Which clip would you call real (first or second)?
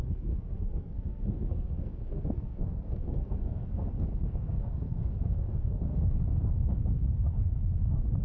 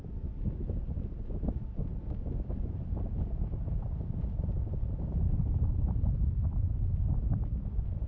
second